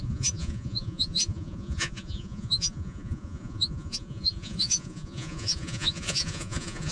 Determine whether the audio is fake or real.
fake